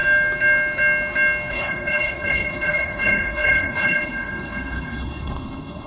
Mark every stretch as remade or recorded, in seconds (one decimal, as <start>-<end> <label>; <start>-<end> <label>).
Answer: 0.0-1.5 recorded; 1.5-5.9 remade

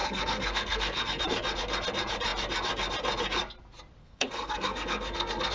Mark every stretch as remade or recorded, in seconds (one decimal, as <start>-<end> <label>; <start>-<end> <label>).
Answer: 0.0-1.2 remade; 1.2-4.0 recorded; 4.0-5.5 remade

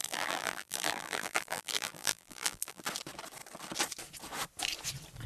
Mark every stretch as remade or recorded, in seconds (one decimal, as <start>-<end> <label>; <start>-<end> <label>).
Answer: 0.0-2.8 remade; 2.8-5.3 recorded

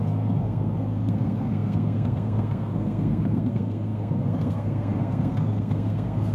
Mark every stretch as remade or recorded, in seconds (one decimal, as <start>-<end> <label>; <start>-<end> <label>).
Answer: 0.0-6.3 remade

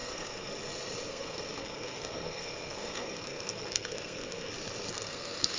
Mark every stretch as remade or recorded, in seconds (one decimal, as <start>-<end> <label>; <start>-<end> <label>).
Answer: 0.0-0.5 remade; 0.5-1.1 recorded; 1.1-4.5 remade; 4.5-4.9 recorded; 4.9-5.6 remade

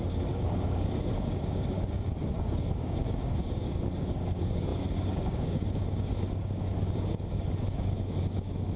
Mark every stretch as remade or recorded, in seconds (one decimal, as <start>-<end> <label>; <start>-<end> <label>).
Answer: 0.0-8.8 remade